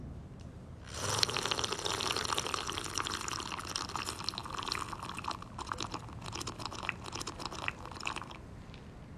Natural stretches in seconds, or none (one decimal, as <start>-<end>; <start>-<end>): 0.0-9.2